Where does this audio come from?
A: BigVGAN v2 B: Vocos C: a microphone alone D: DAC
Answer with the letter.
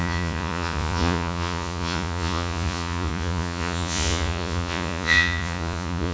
B